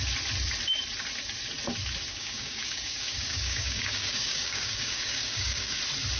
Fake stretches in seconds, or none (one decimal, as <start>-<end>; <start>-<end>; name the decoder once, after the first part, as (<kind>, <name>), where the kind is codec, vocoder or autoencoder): 2.1-5.8 (codec, DAC)